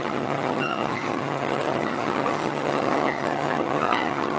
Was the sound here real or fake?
fake